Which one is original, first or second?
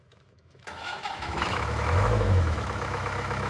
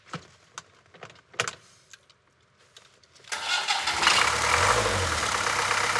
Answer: second